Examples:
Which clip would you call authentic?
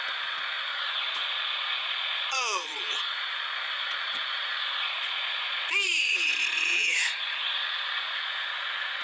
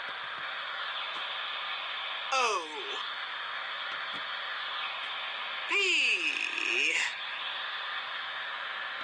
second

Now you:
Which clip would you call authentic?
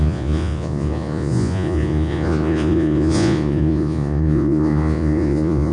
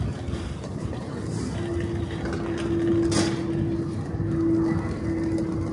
second